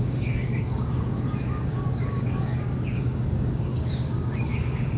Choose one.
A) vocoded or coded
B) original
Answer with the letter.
A